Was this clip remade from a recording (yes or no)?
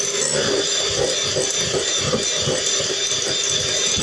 no